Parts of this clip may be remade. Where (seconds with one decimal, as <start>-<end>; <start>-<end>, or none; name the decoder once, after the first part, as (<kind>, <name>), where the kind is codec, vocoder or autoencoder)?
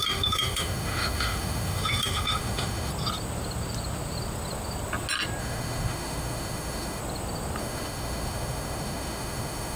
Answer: 0.0-2.9 (autoencoder, DAC-VAE); 5.4-7.0; 7.6-9.8